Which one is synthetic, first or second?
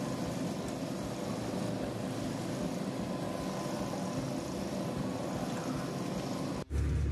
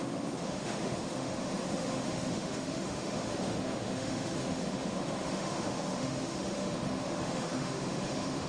second